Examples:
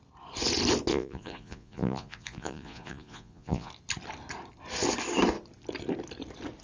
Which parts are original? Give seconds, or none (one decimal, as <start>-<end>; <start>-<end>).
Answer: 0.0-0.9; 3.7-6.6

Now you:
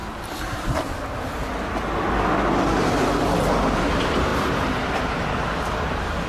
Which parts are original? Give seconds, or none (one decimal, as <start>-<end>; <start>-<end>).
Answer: 0.0-3.8

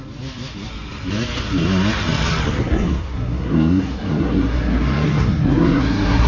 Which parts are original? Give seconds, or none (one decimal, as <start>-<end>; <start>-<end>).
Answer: 0.0-2.6